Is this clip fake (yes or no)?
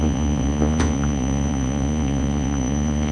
yes